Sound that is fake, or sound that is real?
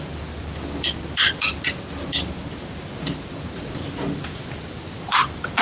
real